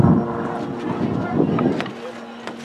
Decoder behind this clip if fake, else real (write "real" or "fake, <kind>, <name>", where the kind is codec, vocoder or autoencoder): real